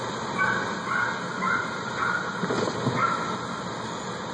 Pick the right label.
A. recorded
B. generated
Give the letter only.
A